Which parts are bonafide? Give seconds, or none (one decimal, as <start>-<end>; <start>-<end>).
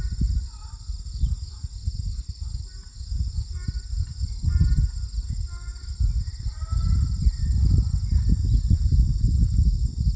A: 0.0-10.2